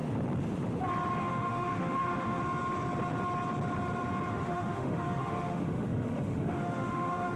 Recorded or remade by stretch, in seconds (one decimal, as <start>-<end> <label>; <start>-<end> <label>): 0.0-1.2 recorded; 1.2-2.4 remade; 2.4-4.3 recorded; 4.3-7.4 remade